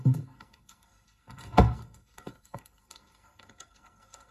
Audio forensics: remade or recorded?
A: remade